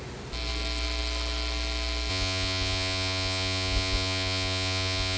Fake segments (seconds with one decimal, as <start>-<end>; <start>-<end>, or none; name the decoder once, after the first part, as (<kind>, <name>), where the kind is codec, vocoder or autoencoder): 2.1-5.2 (vocoder, Vocos)